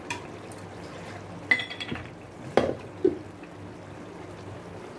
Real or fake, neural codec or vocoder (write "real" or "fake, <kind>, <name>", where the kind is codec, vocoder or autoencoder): real